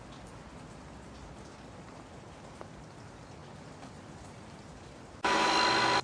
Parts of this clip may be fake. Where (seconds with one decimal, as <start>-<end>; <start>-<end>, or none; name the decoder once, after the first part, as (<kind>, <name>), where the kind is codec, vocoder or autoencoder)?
none